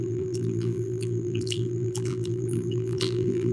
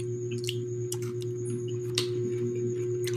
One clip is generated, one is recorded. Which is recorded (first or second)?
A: second